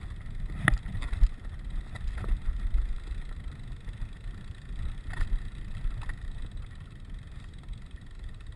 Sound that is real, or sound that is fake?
real